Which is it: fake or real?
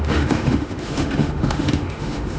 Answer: fake